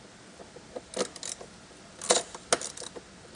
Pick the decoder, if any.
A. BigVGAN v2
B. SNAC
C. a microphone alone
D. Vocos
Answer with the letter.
C